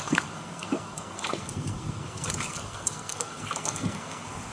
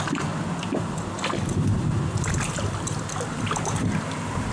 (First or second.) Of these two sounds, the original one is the second